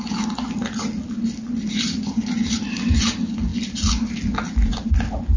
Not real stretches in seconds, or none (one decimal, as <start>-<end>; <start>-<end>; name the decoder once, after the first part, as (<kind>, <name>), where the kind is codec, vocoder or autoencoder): none